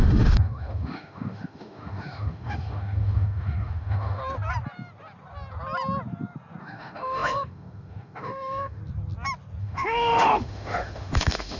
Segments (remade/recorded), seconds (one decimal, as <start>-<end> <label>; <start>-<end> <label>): 0.0-4.2 remade; 4.2-6.6 recorded; 6.6-8.8 remade; 8.8-9.6 recorded; 9.6-11.6 remade